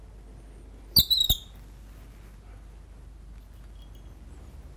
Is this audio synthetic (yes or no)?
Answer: no